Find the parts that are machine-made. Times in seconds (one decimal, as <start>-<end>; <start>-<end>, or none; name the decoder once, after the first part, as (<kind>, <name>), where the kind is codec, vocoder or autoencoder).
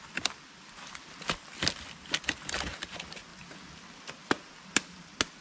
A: none